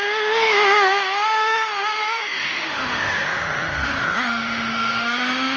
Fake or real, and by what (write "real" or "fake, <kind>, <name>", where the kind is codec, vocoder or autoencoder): fake, autoencoder, DAC-VAE